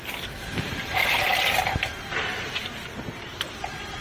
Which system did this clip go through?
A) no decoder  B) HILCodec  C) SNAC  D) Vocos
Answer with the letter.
A